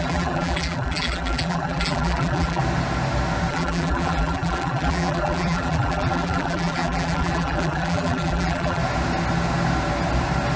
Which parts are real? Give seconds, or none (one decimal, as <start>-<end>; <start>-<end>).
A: 2.6-3.5; 8.8-10.6